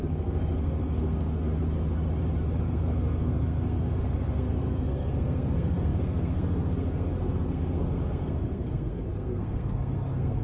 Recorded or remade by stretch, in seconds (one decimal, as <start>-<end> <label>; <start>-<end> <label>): 0.0-1.5 remade; 1.5-2.6 recorded; 2.6-10.4 remade